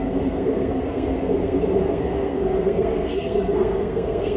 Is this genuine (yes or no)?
no